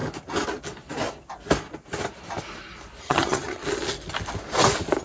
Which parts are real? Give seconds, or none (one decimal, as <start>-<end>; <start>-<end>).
0.0-3.0; 3.6-5.0